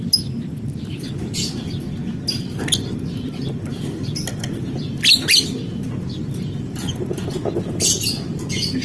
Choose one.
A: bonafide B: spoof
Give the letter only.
A